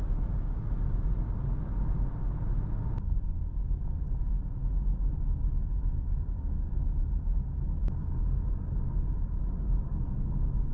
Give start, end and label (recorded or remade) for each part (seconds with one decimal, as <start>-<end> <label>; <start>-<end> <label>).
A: 0.0-10.7 recorded